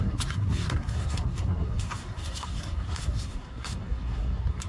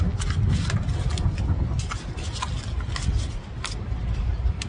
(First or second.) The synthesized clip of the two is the first